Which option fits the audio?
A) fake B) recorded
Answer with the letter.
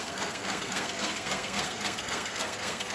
A